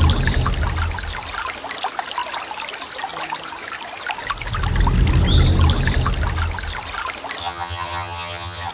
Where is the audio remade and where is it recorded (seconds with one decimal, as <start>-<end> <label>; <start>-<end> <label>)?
0.0-7.4 recorded; 7.4-8.7 remade